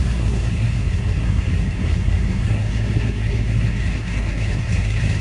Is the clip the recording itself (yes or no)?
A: no